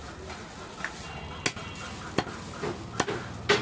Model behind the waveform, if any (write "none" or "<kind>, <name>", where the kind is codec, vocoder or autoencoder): none